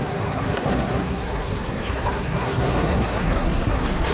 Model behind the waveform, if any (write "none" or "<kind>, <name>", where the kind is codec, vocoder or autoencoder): codec, SNAC